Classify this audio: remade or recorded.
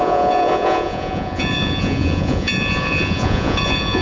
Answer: remade